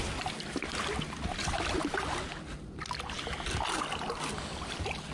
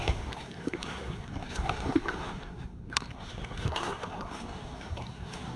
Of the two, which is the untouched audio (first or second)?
first